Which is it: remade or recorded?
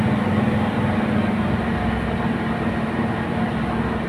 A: recorded